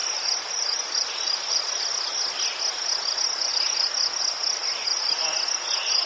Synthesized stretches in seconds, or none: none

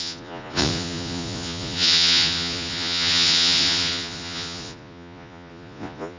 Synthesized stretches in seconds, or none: 0.0-6.2